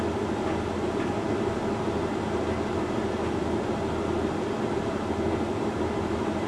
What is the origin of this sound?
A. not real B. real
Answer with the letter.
B